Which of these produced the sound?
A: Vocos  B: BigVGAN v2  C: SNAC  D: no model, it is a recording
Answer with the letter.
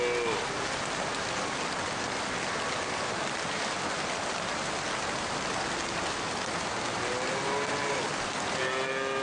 D